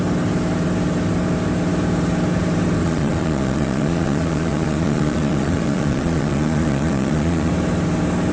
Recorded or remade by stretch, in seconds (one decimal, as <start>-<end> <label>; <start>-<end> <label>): 0.0-2.8 recorded; 2.8-7.5 remade; 7.5-8.3 recorded